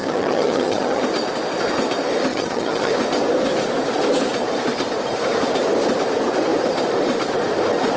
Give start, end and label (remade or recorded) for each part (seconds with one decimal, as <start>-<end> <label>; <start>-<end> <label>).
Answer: 0.0-1.0 remade; 1.0-2.3 recorded; 2.3-2.9 remade; 2.9-8.0 recorded

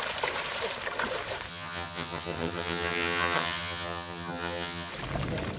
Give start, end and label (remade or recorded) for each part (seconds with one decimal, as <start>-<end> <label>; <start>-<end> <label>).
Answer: 0.0-1.5 recorded; 1.5-4.9 remade; 4.9-5.6 recorded

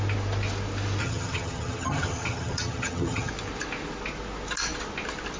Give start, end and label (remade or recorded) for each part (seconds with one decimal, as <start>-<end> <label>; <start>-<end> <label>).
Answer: 0.0-1.0 recorded; 1.0-3.3 remade; 3.3-5.4 recorded

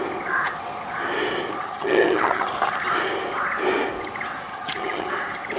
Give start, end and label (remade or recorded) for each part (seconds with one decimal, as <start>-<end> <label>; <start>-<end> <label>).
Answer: 0.0-1.6 recorded; 1.6-2.5 remade; 2.5-4.5 recorded; 4.5-5.1 remade; 5.1-5.6 recorded

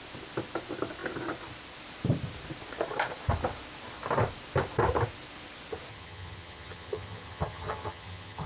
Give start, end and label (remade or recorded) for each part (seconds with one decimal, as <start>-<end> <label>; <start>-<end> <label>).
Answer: 0.0-5.9 recorded; 5.9-8.5 remade